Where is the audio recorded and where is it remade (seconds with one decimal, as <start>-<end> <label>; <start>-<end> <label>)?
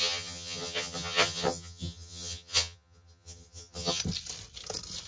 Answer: 0.0-4.0 remade; 4.0-5.1 recorded